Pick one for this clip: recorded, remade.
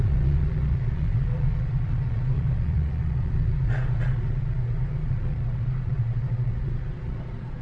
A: remade